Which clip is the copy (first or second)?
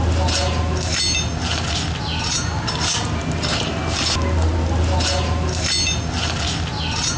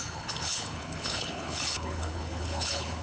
second